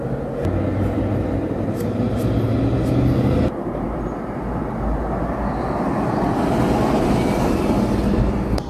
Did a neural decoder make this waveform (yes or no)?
no